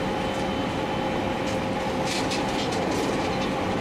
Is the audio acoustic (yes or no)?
yes